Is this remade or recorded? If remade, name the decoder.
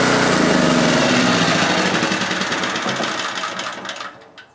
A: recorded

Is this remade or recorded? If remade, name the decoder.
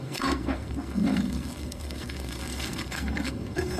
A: remade, codec, SNAC